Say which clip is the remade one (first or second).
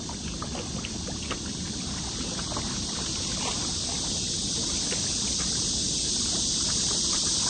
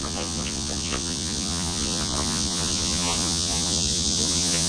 second